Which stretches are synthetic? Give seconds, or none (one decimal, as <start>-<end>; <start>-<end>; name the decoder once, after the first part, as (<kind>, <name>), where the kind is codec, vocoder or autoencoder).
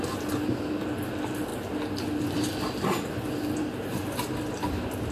none